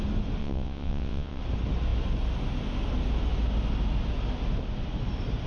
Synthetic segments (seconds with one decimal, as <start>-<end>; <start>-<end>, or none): 0.4-1.4